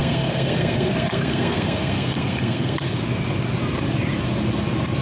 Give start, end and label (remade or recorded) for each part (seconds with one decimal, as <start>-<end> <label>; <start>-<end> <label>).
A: 0.0-3.0 remade; 3.0-5.0 recorded